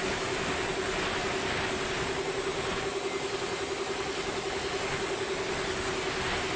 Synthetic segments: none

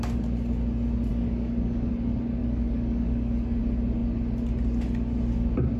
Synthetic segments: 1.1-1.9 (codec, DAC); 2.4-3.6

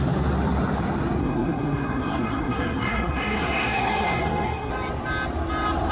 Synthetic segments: 1.2-4.7 (codec, SNAC)

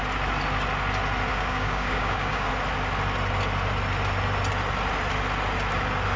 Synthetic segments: 1.3-2.5 (codec, DAC)

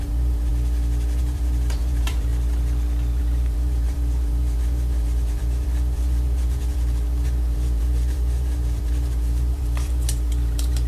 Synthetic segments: 0.0-0.5 (vocoder, BigVGAN v2); 1.2-2.3; 3.2-10.9